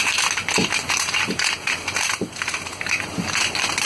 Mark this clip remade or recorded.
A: remade